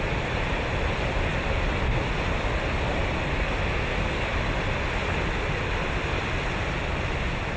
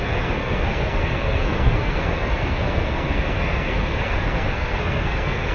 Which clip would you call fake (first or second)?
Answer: second